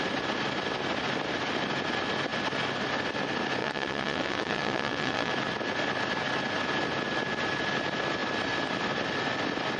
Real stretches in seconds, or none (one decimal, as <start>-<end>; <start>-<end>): 0.0-3.6; 5.3-9.8